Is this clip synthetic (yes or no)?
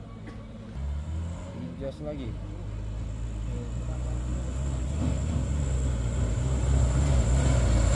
no